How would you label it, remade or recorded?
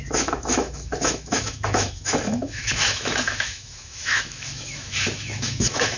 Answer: remade